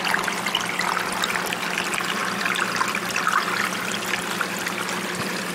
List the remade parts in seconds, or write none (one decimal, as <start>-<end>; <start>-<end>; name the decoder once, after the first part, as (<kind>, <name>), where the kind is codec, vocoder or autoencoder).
none